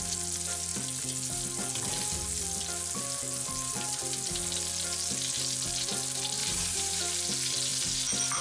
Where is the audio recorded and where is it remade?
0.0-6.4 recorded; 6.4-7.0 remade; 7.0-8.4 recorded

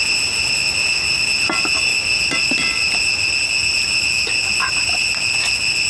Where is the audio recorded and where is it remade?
0.0-4.6 recorded; 4.6-5.1 remade; 5.1-5.9 recorded

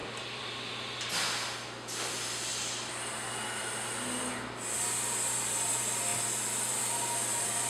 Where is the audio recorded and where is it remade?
0.0-1.1 remade; 1.1-7.7 recorded

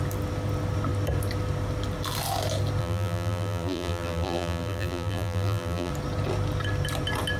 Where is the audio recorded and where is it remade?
0.0-2.8 recorded; 2.8-5.9 remade; 5.9-7.4 recorded

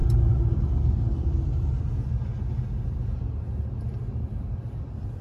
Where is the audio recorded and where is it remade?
0.0-2.3 remade; 2.3-4.2 recorded; 4.2-5.2 remade

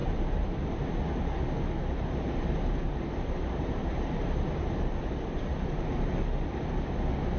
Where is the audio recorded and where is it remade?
0.0-1.2 remade; 1.2-1.8 recorded; 1.8-6.2 remade; 6.2-7.4 recorded